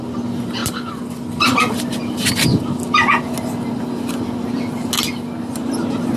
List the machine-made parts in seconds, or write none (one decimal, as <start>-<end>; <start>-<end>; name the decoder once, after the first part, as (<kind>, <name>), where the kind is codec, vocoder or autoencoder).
none